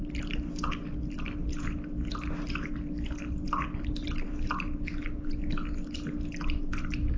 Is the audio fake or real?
real